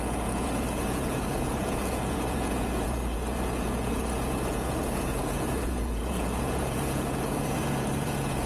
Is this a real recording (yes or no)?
no